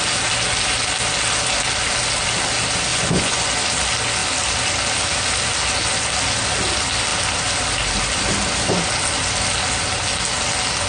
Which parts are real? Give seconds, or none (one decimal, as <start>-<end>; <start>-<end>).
0.0-2.9; 3.5-10.9